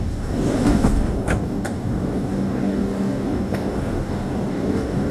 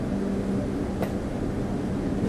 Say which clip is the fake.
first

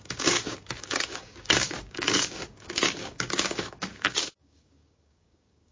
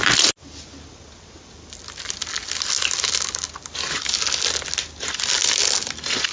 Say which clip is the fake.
first